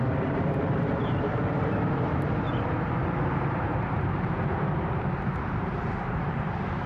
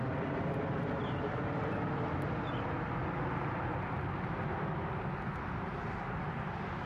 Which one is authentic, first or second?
second